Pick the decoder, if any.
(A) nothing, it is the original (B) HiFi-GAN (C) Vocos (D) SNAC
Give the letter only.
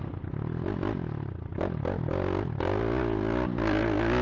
A